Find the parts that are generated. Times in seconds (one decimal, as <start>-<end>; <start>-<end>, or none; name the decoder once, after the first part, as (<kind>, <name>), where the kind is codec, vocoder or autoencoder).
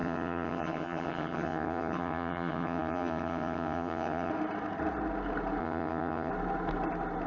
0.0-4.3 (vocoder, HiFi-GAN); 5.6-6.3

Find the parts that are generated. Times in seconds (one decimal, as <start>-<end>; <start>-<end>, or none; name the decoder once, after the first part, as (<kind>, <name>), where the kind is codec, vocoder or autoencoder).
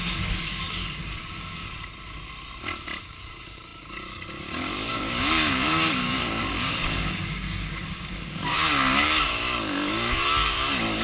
0.0-1.6 (codec, DAC); 3.0-11.0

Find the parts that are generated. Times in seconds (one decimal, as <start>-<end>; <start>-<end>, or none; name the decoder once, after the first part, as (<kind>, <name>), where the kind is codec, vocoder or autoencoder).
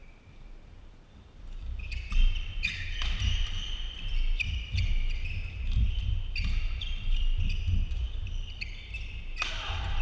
0.0-4.9 (vocoder, BigVGAN v2)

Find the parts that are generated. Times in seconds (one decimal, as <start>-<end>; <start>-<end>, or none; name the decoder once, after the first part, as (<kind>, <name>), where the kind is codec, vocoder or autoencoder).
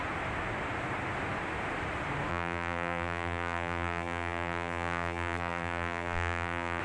2.3-6.8 (vocoder, BigVGAN v2)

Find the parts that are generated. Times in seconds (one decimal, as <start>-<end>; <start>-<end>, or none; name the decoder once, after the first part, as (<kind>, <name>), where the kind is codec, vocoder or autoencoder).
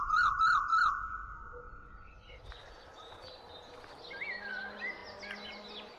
none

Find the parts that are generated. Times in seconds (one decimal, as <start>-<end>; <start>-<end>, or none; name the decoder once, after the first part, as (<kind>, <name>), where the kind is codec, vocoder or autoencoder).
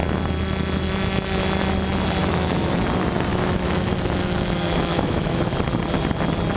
2.2-2.7 (autoencoder, DAC-VAE); 3.3-5.4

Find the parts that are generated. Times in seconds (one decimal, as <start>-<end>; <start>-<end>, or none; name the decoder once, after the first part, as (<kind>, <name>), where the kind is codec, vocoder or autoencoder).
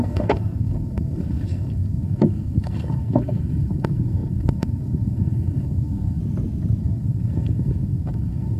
0.0-6.2 (codec, SNAC); 6.8-8.6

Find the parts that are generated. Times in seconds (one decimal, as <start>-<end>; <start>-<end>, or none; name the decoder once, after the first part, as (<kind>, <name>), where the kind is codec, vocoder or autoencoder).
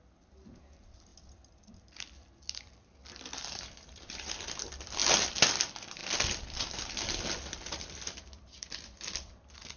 none